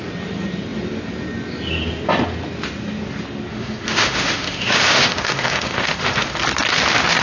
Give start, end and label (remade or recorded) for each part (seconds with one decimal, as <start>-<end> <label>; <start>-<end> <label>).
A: 0.0-3.5 recorded; 3.5-6.4 remade; 6.4-7.2 recorded